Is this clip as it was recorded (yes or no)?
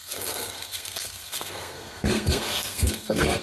no